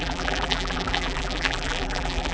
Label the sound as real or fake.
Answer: fake